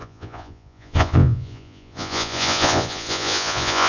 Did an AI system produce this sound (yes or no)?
yes